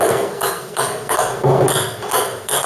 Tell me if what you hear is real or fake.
fake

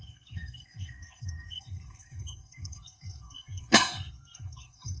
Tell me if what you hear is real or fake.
fake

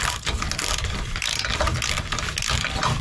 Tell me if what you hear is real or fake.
real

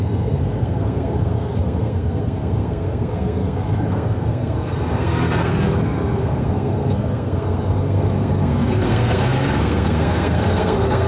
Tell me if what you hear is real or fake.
fake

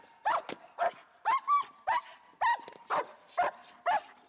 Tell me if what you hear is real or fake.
real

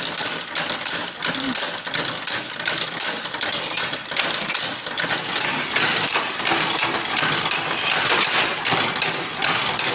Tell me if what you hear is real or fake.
real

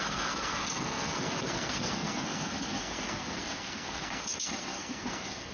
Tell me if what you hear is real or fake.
fake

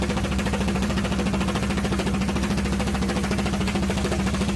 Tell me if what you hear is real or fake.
real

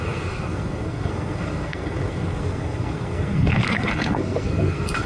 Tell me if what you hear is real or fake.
fake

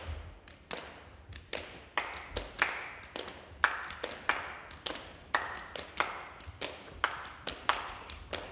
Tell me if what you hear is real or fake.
real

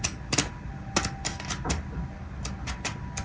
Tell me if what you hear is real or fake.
real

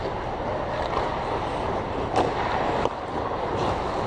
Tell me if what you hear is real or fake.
real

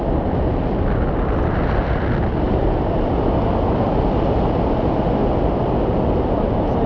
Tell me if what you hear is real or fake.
real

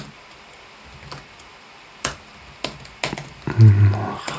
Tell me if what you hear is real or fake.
real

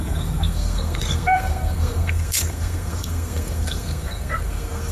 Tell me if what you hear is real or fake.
fake